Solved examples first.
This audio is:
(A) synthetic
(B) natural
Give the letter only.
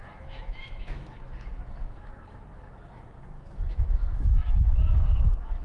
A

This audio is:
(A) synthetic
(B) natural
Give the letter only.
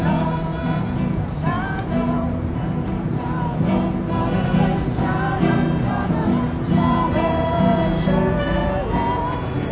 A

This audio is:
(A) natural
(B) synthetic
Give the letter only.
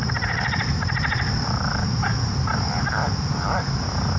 B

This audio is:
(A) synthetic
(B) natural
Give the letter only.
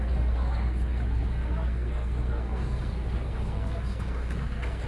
A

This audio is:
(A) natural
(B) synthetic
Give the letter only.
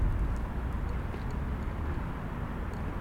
A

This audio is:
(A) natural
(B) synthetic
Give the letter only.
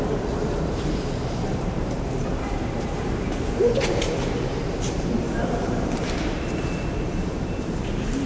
B